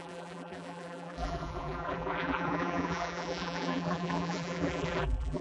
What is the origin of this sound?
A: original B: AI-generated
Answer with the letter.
B